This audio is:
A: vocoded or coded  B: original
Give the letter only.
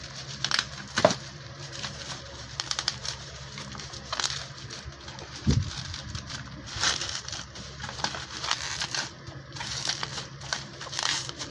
A